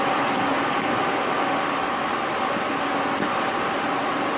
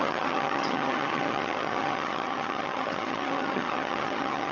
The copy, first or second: second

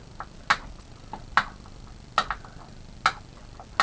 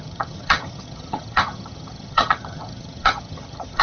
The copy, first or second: second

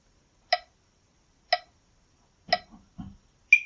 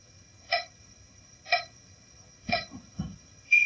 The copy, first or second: second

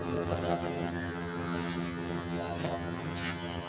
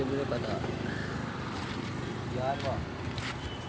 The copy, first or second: first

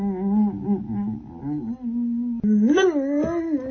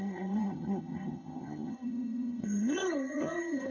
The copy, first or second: second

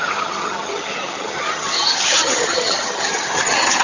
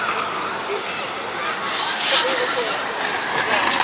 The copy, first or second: first